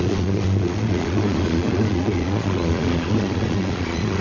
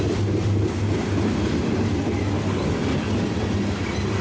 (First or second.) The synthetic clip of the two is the first